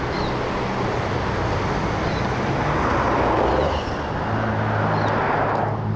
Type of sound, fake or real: real